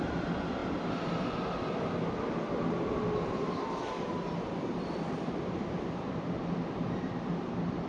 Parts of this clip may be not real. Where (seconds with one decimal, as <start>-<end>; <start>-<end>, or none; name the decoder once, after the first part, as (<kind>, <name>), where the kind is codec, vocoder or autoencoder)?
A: none